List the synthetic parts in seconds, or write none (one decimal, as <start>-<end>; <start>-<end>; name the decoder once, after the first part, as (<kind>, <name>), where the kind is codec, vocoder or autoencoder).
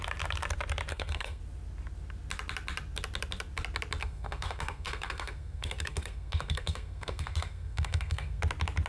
0.9-1.4 (codec, SNAC); 4.0-8.4